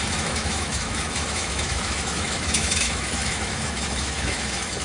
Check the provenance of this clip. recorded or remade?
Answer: remade